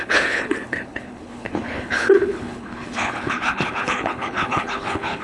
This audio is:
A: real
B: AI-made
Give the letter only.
B